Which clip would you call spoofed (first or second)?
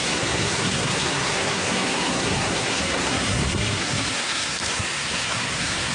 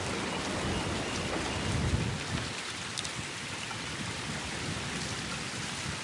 first